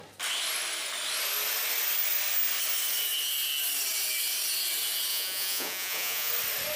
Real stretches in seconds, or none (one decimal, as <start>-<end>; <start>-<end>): 0.0-5.1; 6.3-6.8